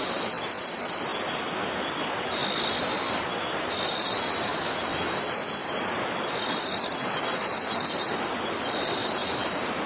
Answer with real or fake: real